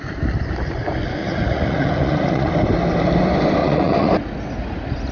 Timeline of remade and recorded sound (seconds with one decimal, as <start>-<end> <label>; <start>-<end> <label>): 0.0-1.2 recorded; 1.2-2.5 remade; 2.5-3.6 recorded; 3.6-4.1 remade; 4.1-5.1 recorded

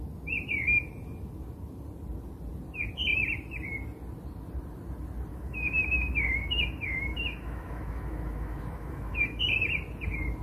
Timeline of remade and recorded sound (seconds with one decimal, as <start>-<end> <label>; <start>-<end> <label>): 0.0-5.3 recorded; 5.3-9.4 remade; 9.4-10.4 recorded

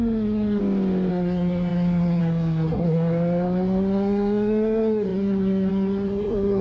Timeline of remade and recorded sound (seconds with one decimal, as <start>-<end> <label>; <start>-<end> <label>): 0.0-0.6 remade; 0.6-1.1 recorded; 1.1-6.6 remade

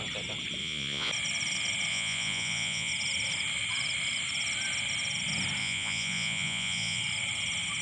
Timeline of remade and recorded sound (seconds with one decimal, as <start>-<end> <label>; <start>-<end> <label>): 0.0-0.6 recorded; 0.6-1.1 remade; 1.1-1.9 recorded; 1.9-2.9 remade; 2.9-5.6 recorded; 5.6-7.0 remade; 7.0-7.8 recorded